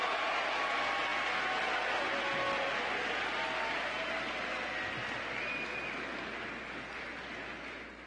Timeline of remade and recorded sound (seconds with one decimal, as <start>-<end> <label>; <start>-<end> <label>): 0.0-8.1 recorded